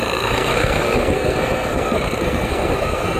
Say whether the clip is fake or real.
fake